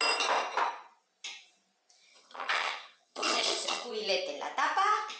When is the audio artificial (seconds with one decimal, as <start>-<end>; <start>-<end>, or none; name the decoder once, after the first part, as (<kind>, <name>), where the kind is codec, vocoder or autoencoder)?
2.1-3.9 (vocoder, HiFi-GAN)